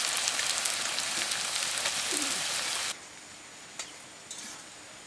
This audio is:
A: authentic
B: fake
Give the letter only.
A